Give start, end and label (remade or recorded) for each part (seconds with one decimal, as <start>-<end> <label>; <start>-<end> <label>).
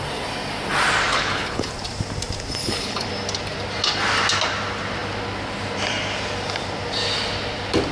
0.0-1.1 recorded; 1.1-1.7 remade; 1.7-2.6 recorded; 2.6-3.1 remade; 3.1-7.9 recorded